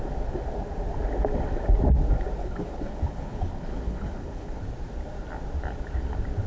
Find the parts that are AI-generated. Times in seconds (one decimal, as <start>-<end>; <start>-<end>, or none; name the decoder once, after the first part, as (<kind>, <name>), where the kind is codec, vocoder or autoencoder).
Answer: 2.4-4.6 (codec, HILCodec)